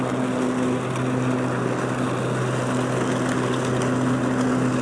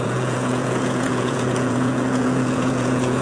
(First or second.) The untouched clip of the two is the first